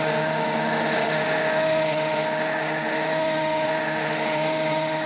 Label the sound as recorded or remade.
remade